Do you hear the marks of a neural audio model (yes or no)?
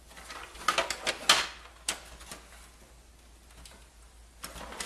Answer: no